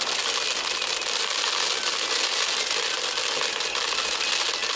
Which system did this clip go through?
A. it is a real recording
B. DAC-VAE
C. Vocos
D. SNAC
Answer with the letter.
A